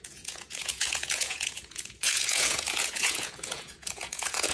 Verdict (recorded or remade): remade